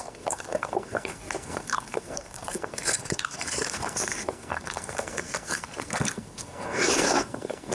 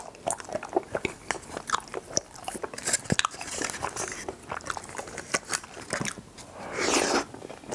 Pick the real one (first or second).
second